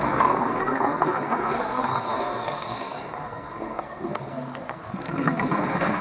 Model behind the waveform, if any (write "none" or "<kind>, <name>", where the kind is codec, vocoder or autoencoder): codec, SNAC